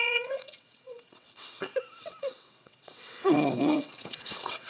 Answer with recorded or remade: remade